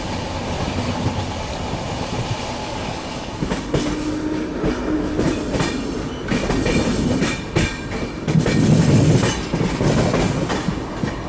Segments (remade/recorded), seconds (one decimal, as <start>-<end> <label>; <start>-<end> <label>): 0.0-2.6 recorded; 2.6-3.5 remade; 3.5-11.3 recorded